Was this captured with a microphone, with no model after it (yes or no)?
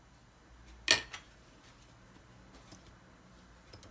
yes